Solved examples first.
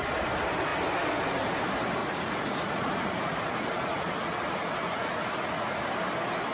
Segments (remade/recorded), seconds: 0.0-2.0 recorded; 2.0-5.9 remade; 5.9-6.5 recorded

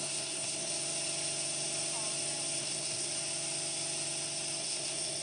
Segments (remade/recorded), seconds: 0.0-0.7 remade; 0.7-2.6 recorded; 2.6-3.1 remade; 3.1-4.6 recorded; 4.6-5.2 remade

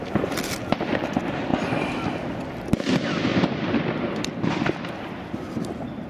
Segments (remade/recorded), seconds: 0.0-6.1 recorded

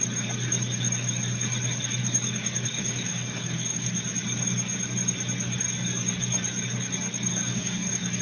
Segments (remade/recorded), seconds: 0.0-2.0 recorded; 2.0-4.0 remade; 4.0-7.3 recorded; 7.3-8.2 remade

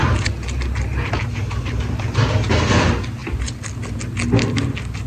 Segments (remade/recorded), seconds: 0.0-5.1 recorded

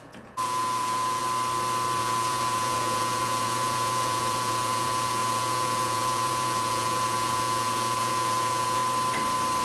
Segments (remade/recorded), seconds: 0.0-1.2 remade; 1.2-2.0 recorded; 2.0-8.8 remade; 8.8-9.6 recorded